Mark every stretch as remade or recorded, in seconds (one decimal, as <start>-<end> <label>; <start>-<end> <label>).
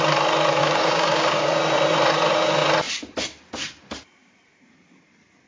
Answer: 0.0-0.6 recorded; 0.6-1.6 remade; 1.6-5.5 recorded